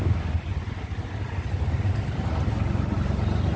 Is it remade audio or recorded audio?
recorded